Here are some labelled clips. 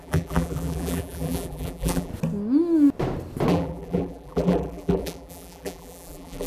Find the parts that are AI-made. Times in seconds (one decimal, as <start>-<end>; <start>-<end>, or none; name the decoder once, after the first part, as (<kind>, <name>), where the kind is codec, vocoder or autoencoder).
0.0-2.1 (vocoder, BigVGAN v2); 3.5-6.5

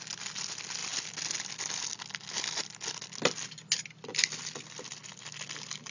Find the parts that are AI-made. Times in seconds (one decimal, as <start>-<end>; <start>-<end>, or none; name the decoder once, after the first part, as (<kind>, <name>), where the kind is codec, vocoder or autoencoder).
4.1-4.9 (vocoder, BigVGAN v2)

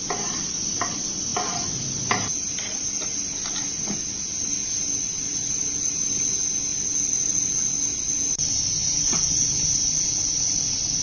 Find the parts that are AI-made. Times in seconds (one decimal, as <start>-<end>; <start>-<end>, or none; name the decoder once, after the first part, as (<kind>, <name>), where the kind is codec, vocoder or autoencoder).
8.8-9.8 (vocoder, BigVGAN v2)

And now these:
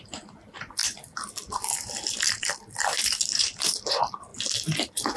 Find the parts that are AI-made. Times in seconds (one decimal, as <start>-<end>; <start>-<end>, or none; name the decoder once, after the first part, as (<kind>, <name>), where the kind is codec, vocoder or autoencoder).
0.8-3.9 (vocoder, BigVGAN v2)

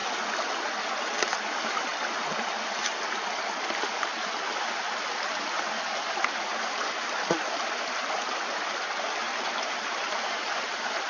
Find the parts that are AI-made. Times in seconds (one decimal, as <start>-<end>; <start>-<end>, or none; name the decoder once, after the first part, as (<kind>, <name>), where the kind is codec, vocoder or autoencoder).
9.2-10.5 (vocoder, BigVGAN v2)